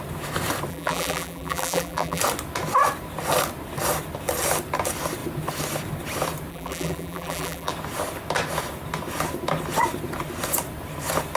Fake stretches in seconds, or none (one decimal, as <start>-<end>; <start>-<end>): 0.7-2.2; 6.5-7.7